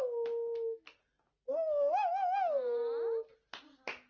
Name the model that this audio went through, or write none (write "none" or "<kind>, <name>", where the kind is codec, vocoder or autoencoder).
none